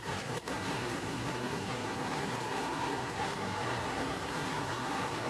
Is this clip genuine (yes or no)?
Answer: no